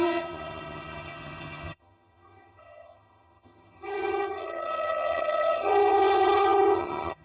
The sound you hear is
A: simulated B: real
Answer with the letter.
A